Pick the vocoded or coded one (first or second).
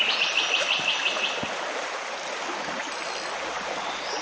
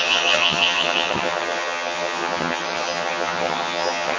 second